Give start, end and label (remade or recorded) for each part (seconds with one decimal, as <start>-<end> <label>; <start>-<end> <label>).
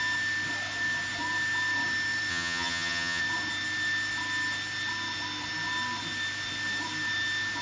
0.0-2.3 recorded; 2.3-3.2 remade; 3.2-7.6 recorded